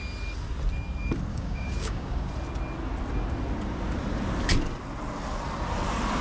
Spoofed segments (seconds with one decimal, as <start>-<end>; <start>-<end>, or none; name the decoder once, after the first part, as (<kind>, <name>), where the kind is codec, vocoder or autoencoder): 1.3-2.3 (codec, DAC)